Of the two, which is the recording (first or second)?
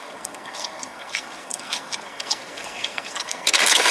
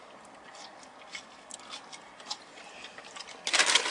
second